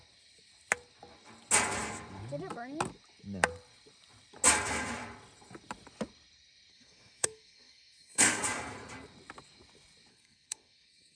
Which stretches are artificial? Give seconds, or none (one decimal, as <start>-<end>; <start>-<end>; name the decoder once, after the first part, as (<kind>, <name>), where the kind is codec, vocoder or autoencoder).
6.7-8.4 (codec, SNAC); 10.1-11.2